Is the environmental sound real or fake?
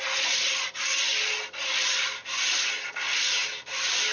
real